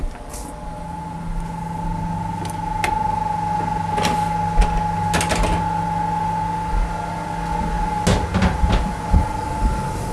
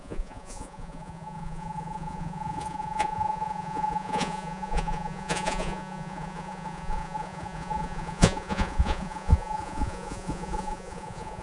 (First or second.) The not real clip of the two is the second